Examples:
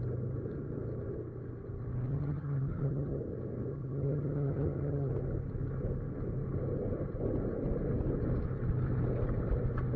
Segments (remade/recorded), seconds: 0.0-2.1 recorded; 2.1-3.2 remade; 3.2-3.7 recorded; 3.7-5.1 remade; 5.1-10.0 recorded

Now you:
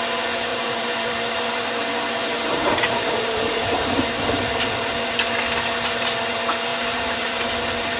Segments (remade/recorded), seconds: 0.0-0.5 recorded; 0.5-4.1 remade; 4.1-6.7 recorded; 6.7-8.0 remade

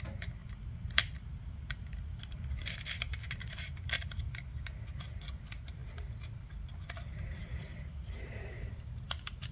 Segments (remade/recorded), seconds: 0.0-0.4 recorded; 0.4-4.3 remade; 4.3-7.4 recorded; 7.4-8.7 remade; 8.7-9.5 recorded

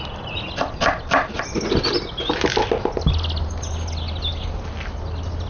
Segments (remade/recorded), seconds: 0.0-5.5 recorded

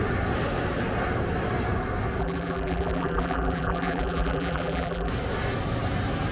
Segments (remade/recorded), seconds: 0.0-2.2 recorded; 2.2-5.1 remade; 5.1-6.3 recorded

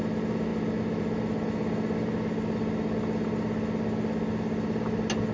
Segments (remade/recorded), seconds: 0.0-5.3 recorded

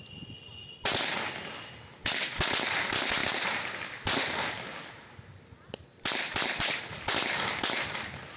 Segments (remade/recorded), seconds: 0.0-8.4 recorded

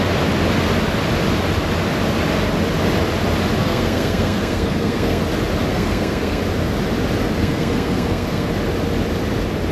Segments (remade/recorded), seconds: 0.0-3.6 recorded; 3.6-5.2 remade; 5.2-5.7 recorded; 5.7-6.4 remade; 6.4-7.4 recorded; 7.4-8.5 remade; 8.5-9.7 recorded